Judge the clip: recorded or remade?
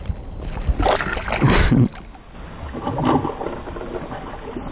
recorded